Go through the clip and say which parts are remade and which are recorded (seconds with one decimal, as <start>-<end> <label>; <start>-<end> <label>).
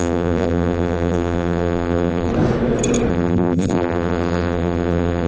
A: 0.0-2.3 remade; 2.3-3.1 recorded; 3.1-5.3 remade